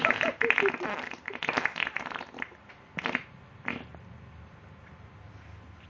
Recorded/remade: recorded